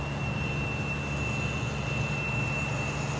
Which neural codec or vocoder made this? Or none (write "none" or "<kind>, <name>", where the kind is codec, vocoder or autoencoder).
none